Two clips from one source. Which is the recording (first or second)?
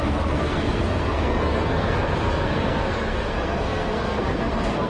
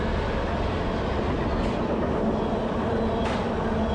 second